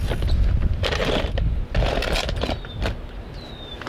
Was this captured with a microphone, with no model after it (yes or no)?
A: yes